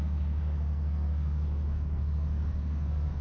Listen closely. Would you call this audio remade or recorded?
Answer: remade